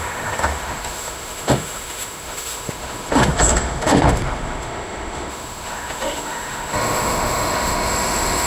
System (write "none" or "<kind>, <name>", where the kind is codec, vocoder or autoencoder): autoencoder, DAC-VAE